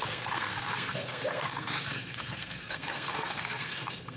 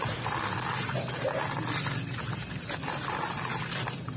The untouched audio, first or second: second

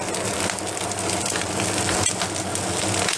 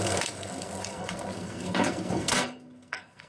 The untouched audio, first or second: first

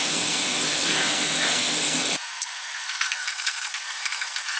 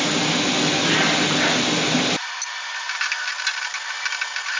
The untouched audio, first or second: second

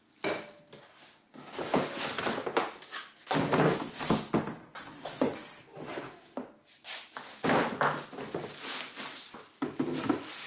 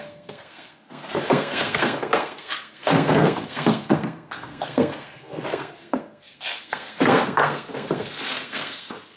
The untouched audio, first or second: first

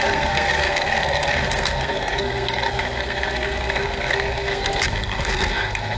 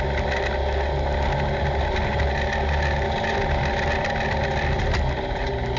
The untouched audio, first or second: second